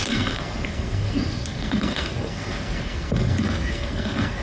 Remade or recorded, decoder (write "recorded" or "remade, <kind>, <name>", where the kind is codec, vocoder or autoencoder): remade, codec, SNAC